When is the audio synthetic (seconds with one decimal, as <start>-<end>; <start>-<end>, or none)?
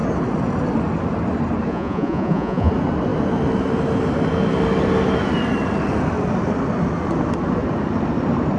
1.7-2.7